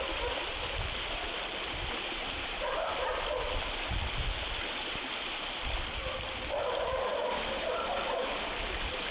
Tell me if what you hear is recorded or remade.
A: remade